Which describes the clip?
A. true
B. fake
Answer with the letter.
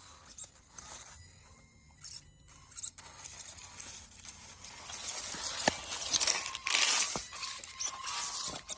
A